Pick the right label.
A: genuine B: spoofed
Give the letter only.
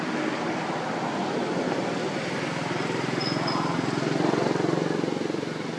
A